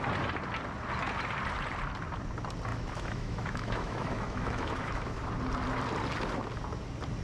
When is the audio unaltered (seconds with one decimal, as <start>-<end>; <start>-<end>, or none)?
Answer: 0.0-2.7; 5.3-7.2